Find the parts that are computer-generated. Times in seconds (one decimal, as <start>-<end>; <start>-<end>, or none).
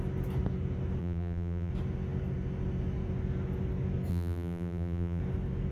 1.0-1.7; 4.1-5.2